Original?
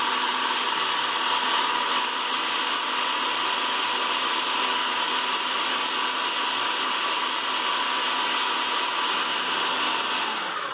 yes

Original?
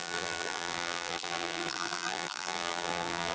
no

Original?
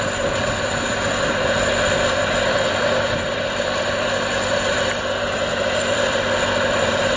no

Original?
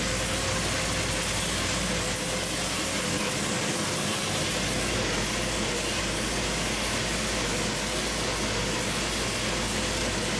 yes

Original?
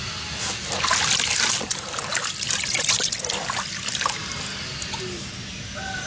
yes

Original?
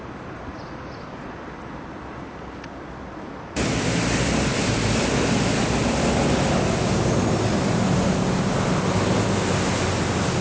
yes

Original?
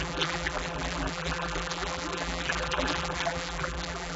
no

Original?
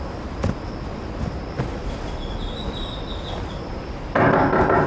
yes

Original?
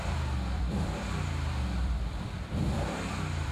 no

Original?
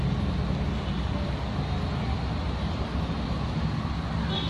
yes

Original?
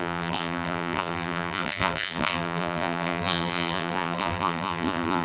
no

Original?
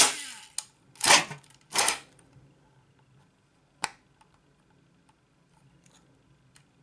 yes